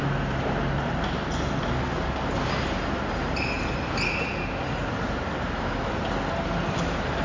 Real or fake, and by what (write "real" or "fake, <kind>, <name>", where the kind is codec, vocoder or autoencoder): real